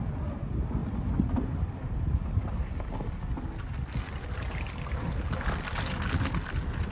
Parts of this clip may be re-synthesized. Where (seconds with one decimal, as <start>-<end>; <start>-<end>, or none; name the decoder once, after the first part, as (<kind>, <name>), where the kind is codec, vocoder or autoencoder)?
none